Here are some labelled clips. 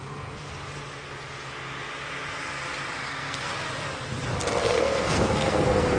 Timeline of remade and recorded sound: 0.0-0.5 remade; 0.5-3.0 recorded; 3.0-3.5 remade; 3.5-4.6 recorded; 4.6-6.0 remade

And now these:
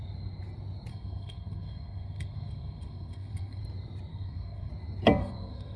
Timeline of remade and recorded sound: 0.0-0.9 recorded; 0.9-3.6 remade; 3.6-4.1 recorded; 4.1-4.7 remade; 4.7-5.2 recorded; 5.2-5.8 remade

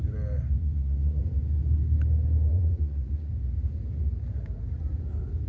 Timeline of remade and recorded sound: 0.0-0.6 recorded; 0.6-1.2 remade; 1.2-2.5 recorded; 2.5-3.3 remade; 3.3-5.5 recorded

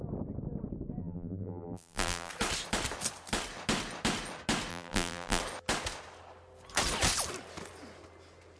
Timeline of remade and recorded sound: 0.0-1.0 recorded; 1.0-2.3 remade; 2.3-4.7 recorded; 4.7-5.4 remade; 5.4-8.6 recorded

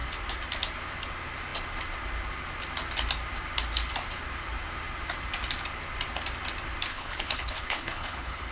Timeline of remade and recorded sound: 0.0-6.9 recorded; 6.9-8.5 remade

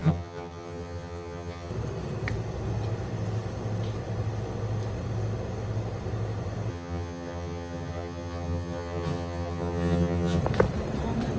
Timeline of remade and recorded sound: 0.0-1.7 remade; 1.7-6.7 recorded; 6.7-10.4 remade; 10.4-11.4 recorded

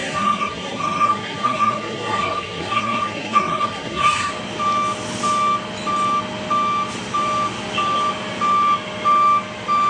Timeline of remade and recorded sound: 0.0-4.3 remade; 4.3-9.9 recorded

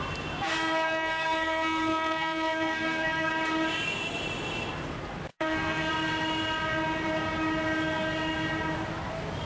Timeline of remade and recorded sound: 0.0-0.5 recorded; 0.5-3.3 remade; 3.3-5.3 recorded; 5.3-5.9 remade; 5.9-9.5 recorded